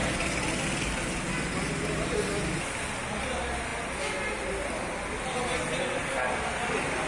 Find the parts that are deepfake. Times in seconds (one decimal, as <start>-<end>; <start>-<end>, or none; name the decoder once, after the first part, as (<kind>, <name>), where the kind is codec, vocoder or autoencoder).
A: none